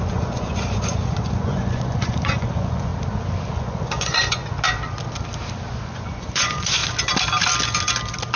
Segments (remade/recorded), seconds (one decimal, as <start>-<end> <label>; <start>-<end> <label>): 0.0-2.9 remade; 2.9-3.5 recorded; 3.5-4.4 remade; 4.4-5.7 recorded; 5.7-6.8 remade; 6.8-8.4 recorded